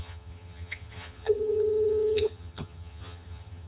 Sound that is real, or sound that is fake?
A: fake